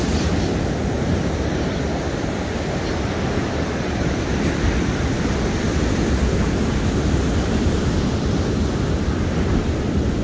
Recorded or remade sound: recorded